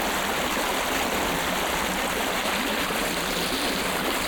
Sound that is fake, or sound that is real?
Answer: real